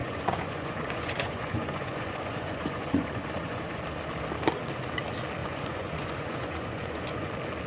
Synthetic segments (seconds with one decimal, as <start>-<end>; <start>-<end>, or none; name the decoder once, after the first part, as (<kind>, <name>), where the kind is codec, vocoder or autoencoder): 0.0-3.8 (vocoder, Vocos); 5.4-7.3